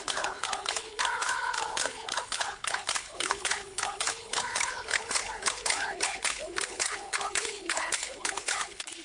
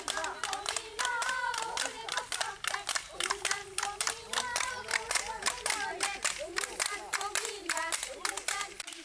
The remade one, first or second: first